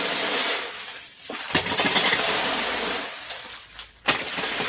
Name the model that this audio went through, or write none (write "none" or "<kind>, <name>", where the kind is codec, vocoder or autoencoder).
none